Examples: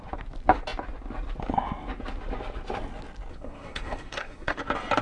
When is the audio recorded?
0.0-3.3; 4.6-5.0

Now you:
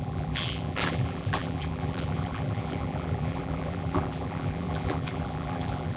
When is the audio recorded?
none